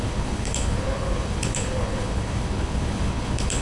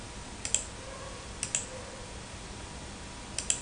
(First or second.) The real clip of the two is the second